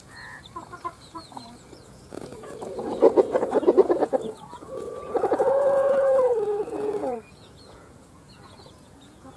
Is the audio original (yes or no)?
no